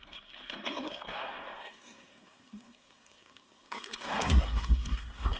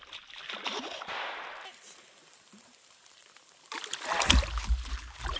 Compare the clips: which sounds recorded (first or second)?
second